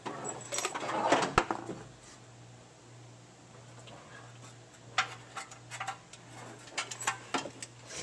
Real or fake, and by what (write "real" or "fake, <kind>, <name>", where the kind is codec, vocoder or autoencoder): real